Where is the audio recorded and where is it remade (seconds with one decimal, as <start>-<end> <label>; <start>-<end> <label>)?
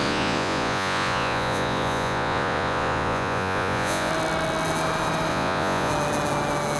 0.0-4.1 remade; 4.1-5.3 recorded; 5.3-5.9 remade; 5.9-6.8 recorded